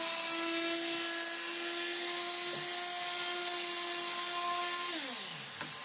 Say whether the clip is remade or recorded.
recorded